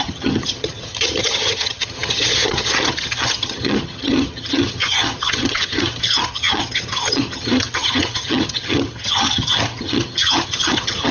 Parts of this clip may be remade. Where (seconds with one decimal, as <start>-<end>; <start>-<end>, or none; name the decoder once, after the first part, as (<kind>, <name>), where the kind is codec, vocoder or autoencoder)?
0.0-11.1 (vocoder, HiFi-GAN)